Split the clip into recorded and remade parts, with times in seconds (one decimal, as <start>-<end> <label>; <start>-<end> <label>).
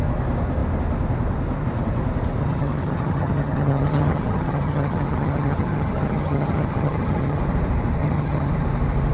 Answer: 0.0-2.4 recorded; 2.4-7.4 remade; 7.4-8.0 recorded; 8.0-8.5 remade; 8.5-9.1 recorded